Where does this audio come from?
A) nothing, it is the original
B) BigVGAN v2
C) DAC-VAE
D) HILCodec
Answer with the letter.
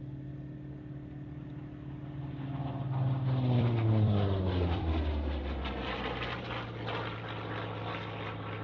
B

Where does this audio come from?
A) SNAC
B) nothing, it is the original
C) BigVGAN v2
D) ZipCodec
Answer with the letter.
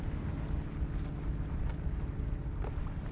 B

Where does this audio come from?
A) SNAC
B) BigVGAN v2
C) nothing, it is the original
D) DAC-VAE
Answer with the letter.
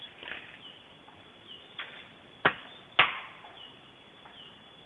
C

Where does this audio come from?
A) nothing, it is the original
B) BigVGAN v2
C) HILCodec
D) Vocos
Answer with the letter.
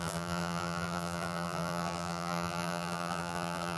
B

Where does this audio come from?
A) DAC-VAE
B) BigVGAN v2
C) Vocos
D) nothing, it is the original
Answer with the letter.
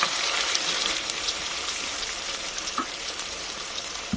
B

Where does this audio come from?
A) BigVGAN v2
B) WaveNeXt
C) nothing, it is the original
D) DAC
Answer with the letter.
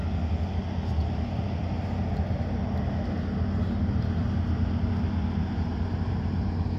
C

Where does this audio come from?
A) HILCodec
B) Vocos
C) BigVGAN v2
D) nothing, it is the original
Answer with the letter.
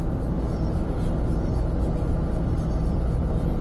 D